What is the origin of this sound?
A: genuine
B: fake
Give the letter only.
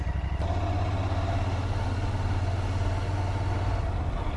A